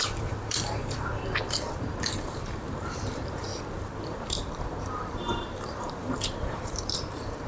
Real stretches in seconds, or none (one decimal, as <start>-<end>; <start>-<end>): 3.5-4.0